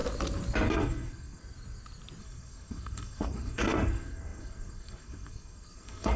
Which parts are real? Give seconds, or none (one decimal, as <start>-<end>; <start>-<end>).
0.0-0.7; 1.4-2.2